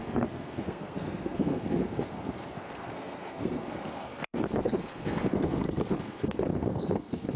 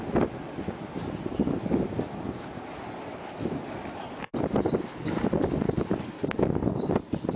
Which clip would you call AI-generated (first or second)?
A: first